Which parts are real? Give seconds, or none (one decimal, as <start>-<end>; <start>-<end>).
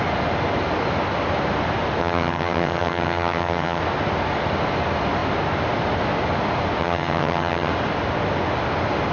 0.0-2.0; 3.8-6.8; 7.7-9.1